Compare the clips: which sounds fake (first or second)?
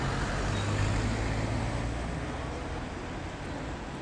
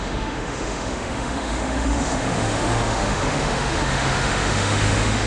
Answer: second